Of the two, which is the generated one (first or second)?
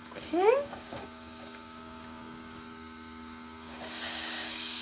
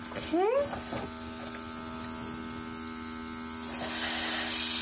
first